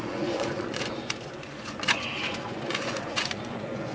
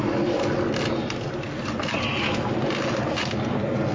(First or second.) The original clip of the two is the second